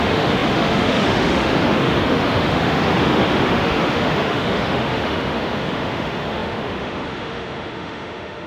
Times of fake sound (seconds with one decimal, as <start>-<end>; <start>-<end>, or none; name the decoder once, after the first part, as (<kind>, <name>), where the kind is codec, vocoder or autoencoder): 0.0-8.5 (autoencoder, DAC-VAE)